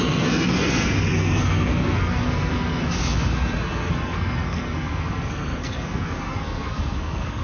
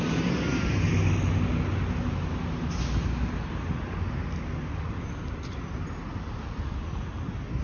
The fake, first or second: first